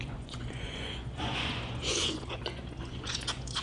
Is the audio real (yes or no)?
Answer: no